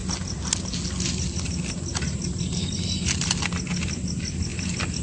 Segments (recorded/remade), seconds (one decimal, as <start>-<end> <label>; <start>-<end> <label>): 0.0-5.0 recorded